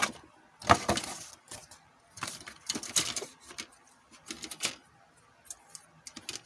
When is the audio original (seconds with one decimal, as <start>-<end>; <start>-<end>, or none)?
0.0-1.6; 4.7-6.5